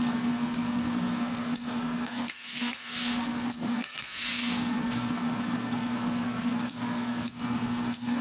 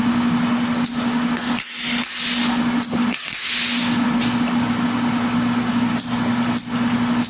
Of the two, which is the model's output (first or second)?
first